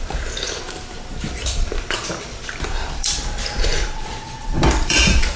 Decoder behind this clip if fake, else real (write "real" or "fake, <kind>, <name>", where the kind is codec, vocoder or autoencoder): fake, vocoder, BigVGAN v2